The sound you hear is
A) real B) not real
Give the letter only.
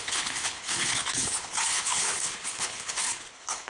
B